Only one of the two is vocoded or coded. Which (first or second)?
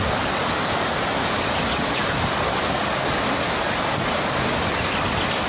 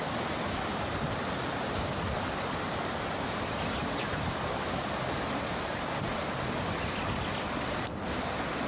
second